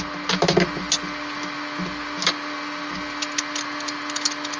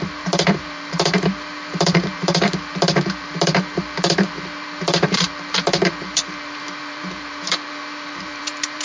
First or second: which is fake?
second